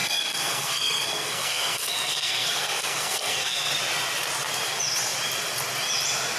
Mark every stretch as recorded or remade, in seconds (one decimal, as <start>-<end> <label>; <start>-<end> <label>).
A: 0.0-3.7 remade; 3.7-6.4 recorded